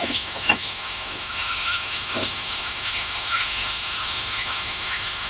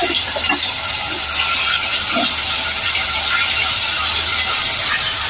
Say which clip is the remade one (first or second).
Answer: first